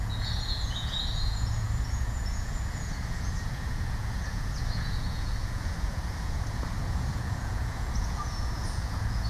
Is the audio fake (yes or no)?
yes